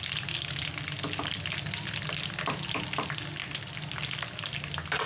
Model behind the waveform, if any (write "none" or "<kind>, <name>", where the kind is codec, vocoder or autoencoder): none